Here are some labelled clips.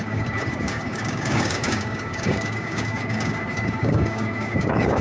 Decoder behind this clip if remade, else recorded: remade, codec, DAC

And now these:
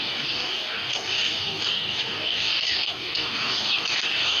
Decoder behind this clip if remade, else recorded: remade, codec, DAC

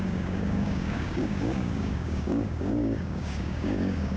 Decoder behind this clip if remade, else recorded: remade, codec, DAC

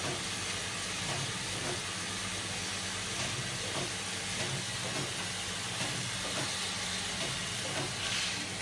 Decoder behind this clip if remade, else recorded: recorded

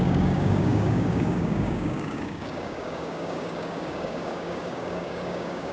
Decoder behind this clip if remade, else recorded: remade, codec, DAC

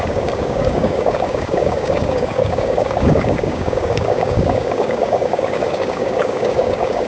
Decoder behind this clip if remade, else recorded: remade, codec, DAC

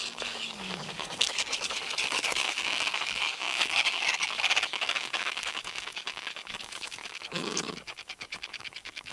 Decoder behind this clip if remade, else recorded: remade, codec, DAC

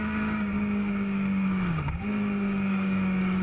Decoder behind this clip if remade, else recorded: remade, codec, DAC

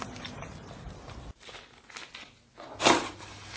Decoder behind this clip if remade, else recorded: recorded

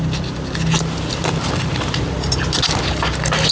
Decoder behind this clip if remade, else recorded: recorded